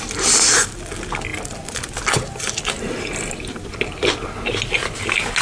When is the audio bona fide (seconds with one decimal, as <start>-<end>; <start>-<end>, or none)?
0.0-1.3; 4.5-5.4